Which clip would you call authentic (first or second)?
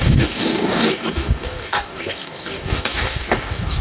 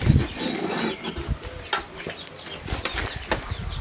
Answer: second